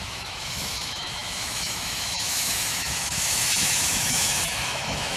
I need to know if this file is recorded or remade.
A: remade